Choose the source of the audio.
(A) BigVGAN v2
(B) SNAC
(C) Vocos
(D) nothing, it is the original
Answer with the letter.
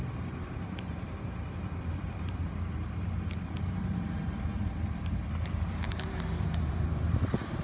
A